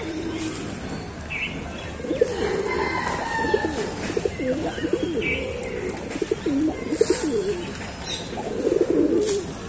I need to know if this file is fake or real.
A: real